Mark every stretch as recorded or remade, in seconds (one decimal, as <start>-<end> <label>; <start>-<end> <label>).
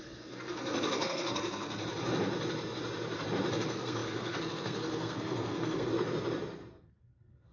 0.0-1.8 remade; 1.8-3.5 recorded; 3.5-5.9 remade; 5.9-7.0 recorded; 7.0-7.5 remade